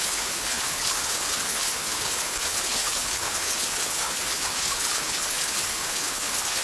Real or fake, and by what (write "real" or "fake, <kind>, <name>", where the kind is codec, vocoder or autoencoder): fake, codec, HILCodec